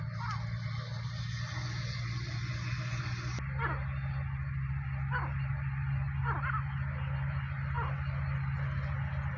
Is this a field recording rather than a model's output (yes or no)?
yes